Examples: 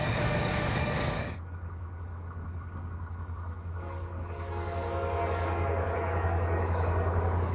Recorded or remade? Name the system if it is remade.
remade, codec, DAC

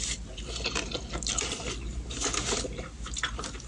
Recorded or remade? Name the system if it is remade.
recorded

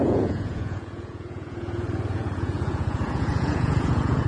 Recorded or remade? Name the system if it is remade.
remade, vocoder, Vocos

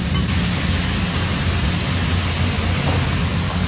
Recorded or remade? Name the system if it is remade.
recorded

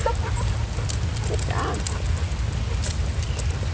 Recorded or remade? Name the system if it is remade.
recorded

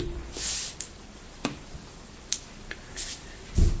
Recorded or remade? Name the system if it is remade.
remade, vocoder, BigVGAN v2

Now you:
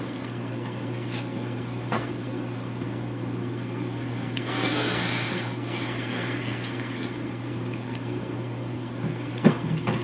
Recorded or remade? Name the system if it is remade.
remade, codec, SNAC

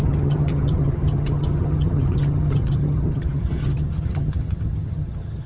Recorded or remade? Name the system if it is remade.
remade, vocoder, HiFi-GAN